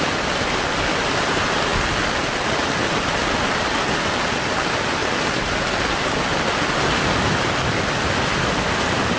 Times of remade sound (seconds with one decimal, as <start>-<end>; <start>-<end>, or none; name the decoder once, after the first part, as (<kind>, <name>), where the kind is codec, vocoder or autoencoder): none